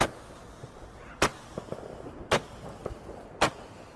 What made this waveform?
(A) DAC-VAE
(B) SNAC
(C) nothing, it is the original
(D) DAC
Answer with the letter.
C